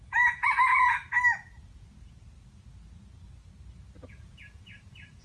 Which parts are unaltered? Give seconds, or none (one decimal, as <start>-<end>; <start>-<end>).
1.0-4.1